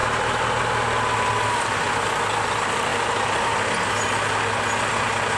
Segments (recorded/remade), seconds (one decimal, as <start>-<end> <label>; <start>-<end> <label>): 0.0-5.4 recorded